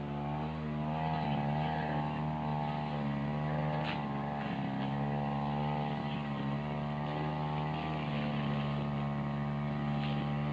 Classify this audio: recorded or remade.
recorded